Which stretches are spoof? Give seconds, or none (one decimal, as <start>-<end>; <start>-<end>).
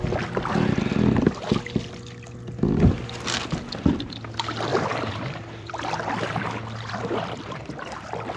4.7-7.4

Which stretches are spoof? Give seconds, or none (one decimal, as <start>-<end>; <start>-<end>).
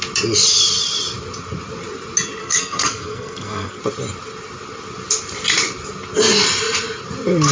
2.4-3.8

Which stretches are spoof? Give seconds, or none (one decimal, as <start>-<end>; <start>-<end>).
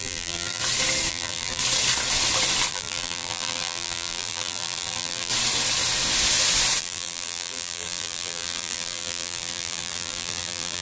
0.0-0.6; 1.1-1.6; 2.7-5.3; 6.8-10.8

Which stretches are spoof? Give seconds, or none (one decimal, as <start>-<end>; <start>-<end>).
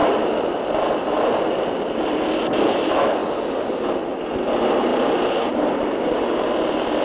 2.4-3.2; 4.3-7.0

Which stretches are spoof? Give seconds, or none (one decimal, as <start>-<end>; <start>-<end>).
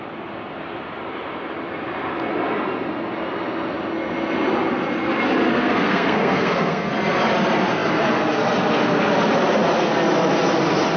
5.5-6.9